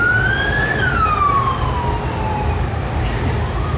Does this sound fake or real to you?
real